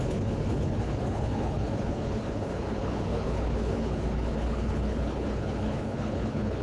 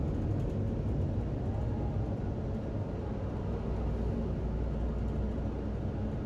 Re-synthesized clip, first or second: first